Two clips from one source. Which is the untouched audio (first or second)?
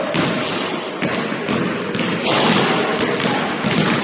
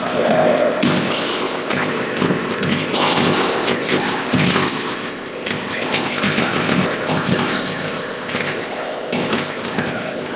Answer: first